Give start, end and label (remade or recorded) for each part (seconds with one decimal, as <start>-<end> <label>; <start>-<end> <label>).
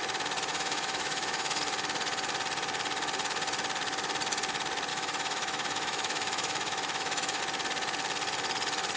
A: 0.0-0.5 recorded; 0.5-1.6 remade; 1.6-4.9 recorded; 4.9-7.4 remade; 7.4-9.0 recorded